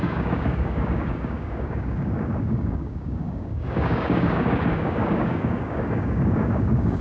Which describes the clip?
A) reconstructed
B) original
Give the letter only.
A